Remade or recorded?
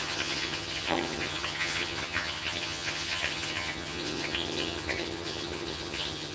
remade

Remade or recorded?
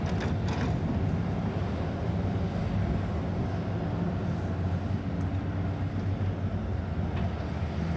recorded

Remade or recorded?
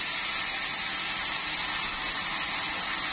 recorded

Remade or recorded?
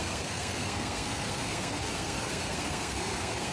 remade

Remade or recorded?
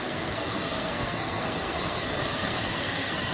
remade